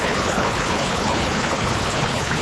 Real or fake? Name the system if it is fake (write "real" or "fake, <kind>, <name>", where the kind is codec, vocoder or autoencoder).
fake, codec, HILCodec